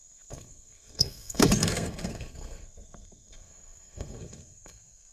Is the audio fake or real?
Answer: fake